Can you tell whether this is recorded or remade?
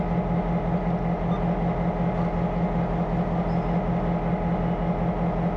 recorded